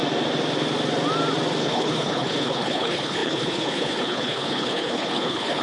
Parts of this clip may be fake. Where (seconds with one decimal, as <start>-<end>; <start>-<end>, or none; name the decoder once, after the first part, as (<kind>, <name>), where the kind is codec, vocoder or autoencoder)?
1.6-5.6 (codec, HILCodec)